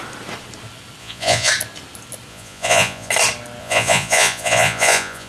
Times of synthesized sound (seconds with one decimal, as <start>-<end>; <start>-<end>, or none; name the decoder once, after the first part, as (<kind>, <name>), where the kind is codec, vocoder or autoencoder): 1.0-1.5 (vocoder, Vocos); 2.3-3.1; 3.6-5.3